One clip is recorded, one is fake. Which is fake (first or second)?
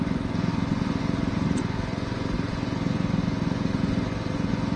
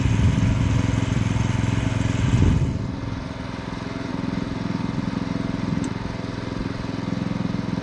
first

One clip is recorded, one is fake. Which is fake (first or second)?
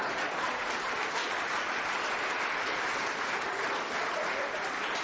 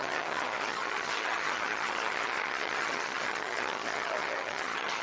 second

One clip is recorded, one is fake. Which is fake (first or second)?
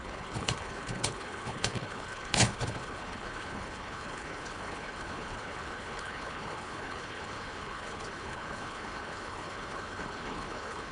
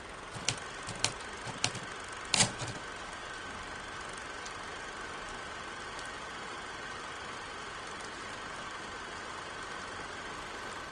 first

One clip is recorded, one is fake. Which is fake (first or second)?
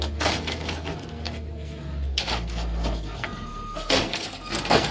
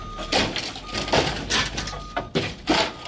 first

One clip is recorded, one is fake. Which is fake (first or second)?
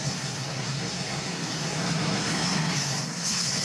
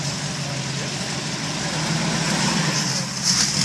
first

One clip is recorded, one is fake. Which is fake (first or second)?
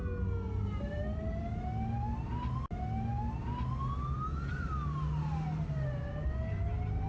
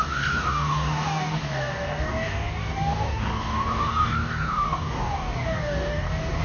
second